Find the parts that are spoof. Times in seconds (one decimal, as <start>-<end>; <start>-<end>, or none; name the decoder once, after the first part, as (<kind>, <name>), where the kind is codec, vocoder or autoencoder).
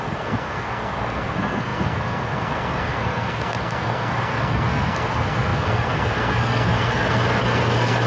0.0-8.1 (codec, SNAC)